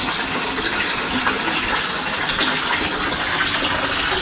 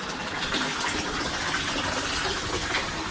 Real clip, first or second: first